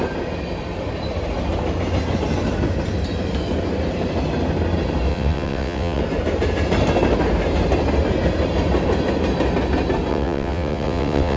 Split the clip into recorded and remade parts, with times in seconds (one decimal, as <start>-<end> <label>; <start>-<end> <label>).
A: 0.0-5.1 recorded; 5.1-6.0 remade; 6.0-10.1 recorded; 10.1-11.4 remade